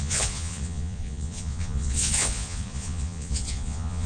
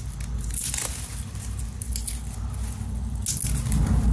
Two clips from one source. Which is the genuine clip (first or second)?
second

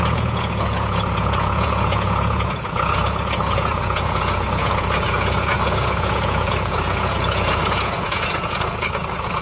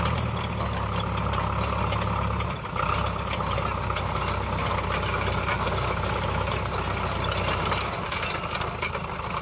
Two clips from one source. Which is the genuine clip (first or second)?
second